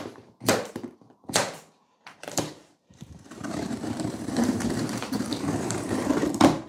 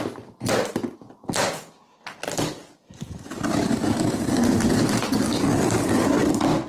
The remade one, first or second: first